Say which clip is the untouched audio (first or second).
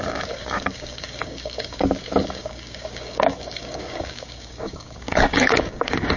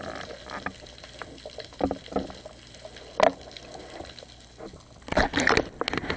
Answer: second